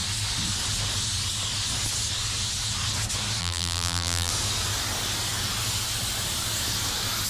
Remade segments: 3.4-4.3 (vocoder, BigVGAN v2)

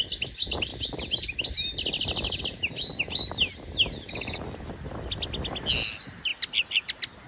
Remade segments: 0.7-2.4 (vocoder, BigVGAN v2)

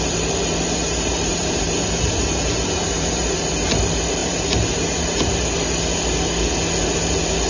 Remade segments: 0.8-3.8 (vocoder, BigVGAN v2); 4.2-5.3

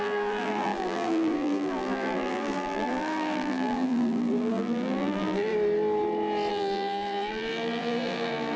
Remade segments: 0.0-5.5 (vocoder, BigVGAN v2); 6.5-8.6

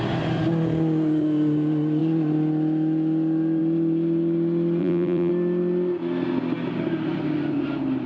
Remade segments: 4.8-5.3 (vocoder, BigVGAN v2)

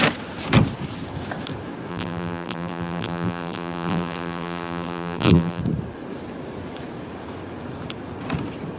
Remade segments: 1.9-5.6 (vocoder, BigVGAN v2)

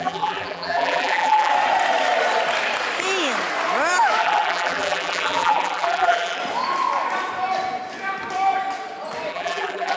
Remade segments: 0.0-1.5 (vocoder, BigVGAN v2); 4.2-6.4; 9.3-10.0

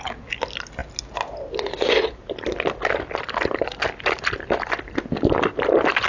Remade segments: none